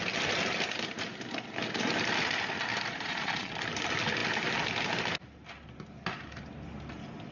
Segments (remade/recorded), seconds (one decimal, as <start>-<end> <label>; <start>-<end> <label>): 0.0-2.9 recorded; 2.9-3.5 remade; 3.5-7.3 recorded